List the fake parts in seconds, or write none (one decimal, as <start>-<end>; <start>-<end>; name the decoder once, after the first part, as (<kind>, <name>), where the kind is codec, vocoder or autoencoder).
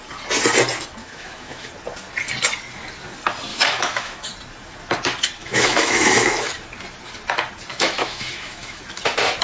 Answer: 1.0-1.7 (autoencoder, DAC-VAE); 3.5-4.3; 5.4-6.5; 7.7-8.8